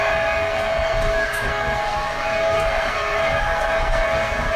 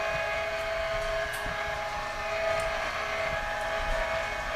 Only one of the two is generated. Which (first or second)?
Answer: first